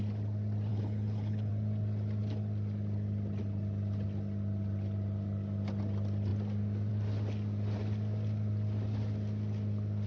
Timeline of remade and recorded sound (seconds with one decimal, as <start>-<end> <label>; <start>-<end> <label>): 0.0-0.7 recorded; 0.7-1.5 remade; 1.5-10.1 recorded